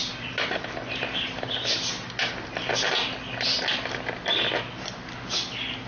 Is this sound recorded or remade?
recorded